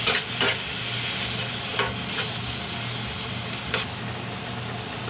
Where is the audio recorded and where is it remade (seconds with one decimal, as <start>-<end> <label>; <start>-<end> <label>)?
0.0-5.1 recorded